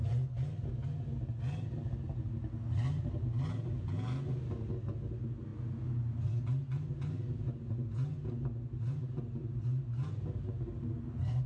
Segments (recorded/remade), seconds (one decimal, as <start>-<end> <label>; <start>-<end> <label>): 0.0-11.5 recorded